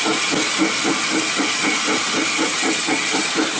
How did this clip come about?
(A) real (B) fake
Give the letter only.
A